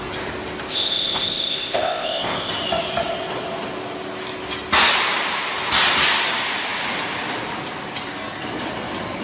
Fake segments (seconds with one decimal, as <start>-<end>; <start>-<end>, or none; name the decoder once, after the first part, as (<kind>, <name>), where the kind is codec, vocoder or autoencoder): 0.7-2.5 (codec, ZipCodec)